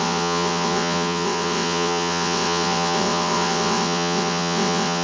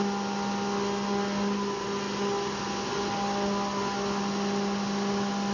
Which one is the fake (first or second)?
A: first